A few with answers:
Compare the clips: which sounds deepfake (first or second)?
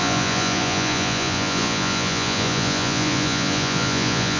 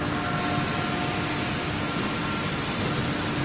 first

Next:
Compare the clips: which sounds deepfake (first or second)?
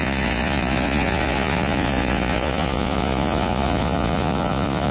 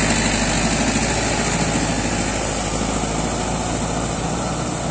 first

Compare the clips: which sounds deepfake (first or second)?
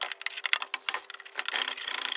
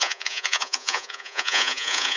second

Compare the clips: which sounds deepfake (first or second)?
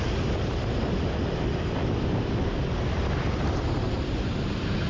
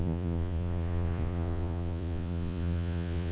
second